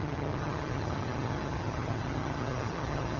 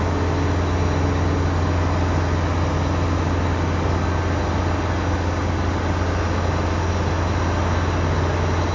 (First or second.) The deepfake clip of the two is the first